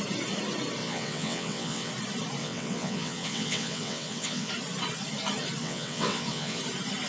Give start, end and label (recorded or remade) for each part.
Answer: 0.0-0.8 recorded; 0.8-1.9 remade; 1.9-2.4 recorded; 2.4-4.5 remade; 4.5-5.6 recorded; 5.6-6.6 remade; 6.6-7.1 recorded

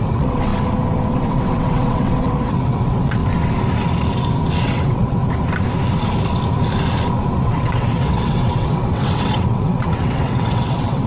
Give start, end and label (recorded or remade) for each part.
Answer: 0.0-0.5 remade; 0.5-1.2 recorded; 1.2-3.2 remade; 3.2-4.6 recorded; 4.6-5.2 remade; 5.2-7.4 recorded; 7.4-11.1 remade

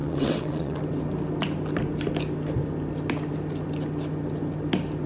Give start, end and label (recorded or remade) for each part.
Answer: 0.0-0.8 remade; 0.8-5.1 recorded

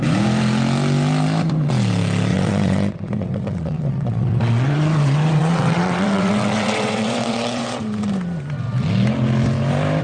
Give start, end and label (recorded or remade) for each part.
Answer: 0.0-2.3 recorded; 2.3-4.4 remade; 4.4-5.4 recorded; 5.4-7.8 remade; 7.8-10.0 recorded